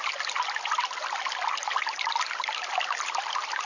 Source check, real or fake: real